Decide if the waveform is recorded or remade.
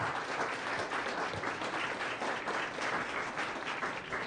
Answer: recorded